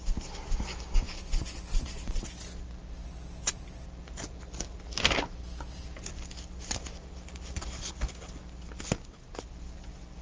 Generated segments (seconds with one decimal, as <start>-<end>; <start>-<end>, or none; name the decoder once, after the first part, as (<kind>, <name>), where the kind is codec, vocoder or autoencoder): 0.7-1.3 (codec, DAC)